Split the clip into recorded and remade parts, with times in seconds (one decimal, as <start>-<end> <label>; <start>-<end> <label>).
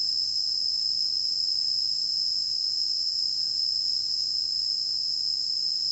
0.0-5.9 remade